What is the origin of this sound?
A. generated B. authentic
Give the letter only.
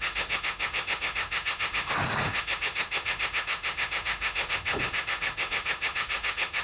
A